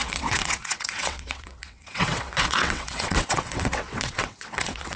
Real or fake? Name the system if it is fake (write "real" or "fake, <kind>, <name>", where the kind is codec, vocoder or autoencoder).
fake, vocoder, WaveNeXt